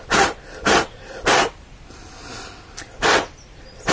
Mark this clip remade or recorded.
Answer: recorded